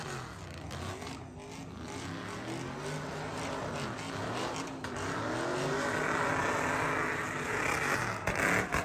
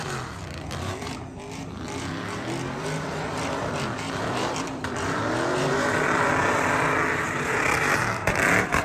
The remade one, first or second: second